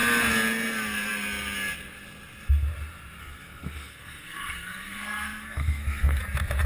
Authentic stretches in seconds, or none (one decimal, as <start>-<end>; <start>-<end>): 0.0-3.2; 6.2-6.7

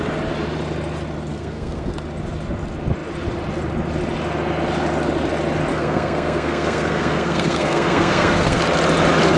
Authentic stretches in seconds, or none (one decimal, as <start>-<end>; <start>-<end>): 0.0-1.3; 1.9-5.7; 8.6-9.4

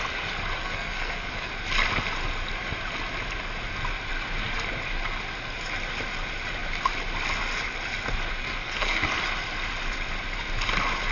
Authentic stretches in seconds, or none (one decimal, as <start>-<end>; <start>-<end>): 0.0-0.6; 1.5-8.4; 9.0-11.1